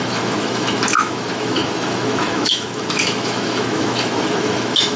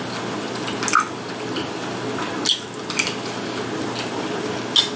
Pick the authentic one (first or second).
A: second